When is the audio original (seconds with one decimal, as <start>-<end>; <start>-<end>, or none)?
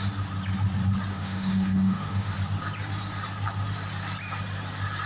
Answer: 0.0-1.1; 2.3-5.1